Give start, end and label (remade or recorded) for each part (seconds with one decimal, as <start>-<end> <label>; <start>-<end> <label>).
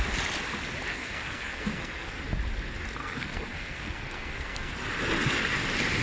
0.0-0.9 recorded; 0.9-2.2 remade; 2.2-3.0 recorded; 3.0-4.7 remade; 4.7-6.0 recorded